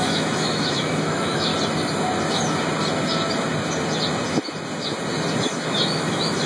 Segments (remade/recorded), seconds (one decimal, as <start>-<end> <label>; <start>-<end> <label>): 0.0-1.5 remade; 1.5-5.4 recorded; 5.4-6.5 remade